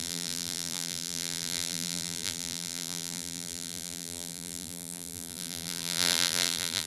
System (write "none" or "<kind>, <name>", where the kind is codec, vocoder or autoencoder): vocoder, BigVGAN v2